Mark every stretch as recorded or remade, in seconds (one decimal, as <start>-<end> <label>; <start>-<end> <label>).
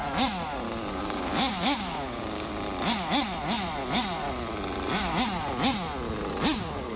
0.0-0.9 recorded; 0.9-2.5 remade; 2.5-6.6 recorded; 6.6-7.0 remade